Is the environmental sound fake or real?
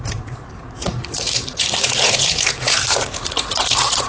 fake